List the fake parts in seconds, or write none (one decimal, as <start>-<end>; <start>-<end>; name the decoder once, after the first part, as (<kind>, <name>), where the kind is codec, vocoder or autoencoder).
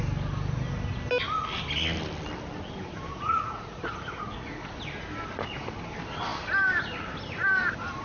3.1-4.7 (vocoder, Vocos)